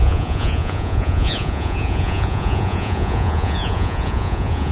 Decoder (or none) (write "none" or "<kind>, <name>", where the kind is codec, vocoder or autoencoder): vocoder, Vocos